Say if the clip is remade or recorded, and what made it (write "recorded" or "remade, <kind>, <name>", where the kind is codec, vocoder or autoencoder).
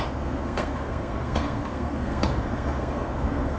remade, codec, SNAC